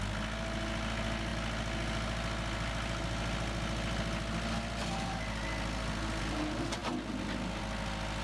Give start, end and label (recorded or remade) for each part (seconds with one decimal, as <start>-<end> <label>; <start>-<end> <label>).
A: 0.0-8.2 recorded